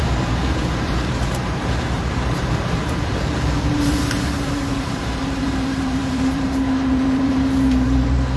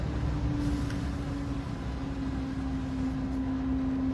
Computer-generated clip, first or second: first